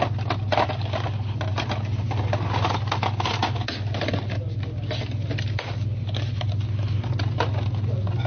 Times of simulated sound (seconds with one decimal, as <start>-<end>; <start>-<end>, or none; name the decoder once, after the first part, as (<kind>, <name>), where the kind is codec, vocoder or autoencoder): none